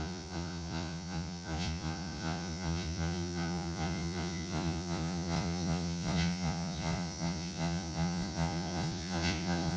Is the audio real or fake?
fake